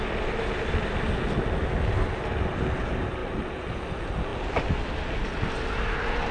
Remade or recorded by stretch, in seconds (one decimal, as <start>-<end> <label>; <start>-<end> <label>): 0.0-3.2 recorded; 3.2-3.8 remade; 3.8-6.3 recorded